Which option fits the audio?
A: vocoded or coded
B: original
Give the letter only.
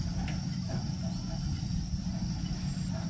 B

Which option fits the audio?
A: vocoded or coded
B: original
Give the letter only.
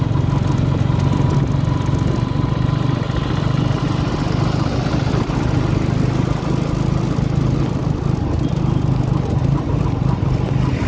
B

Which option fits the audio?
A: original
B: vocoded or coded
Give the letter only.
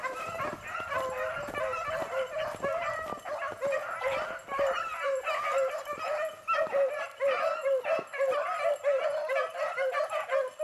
A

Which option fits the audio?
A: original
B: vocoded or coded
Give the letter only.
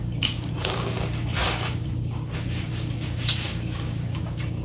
B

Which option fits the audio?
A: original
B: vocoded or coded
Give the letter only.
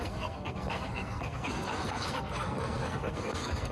B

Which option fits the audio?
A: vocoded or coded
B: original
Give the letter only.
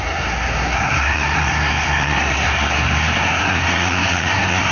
A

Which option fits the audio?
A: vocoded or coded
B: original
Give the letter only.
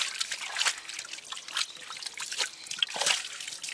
B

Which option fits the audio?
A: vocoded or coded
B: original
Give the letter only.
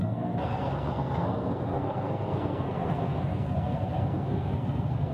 A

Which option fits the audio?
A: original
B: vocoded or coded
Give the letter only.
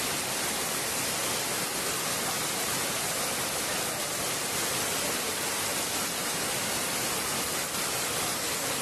A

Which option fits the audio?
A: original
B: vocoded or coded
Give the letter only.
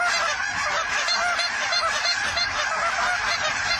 A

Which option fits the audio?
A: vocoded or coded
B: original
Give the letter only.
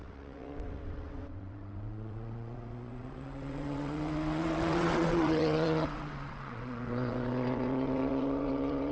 A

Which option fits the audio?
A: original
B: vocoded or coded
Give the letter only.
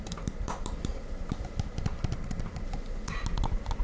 A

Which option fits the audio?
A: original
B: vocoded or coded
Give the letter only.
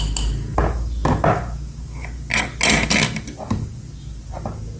A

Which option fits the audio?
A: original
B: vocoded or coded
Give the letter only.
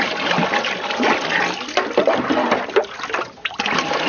A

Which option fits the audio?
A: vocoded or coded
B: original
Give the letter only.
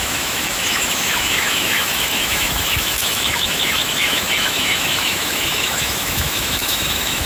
A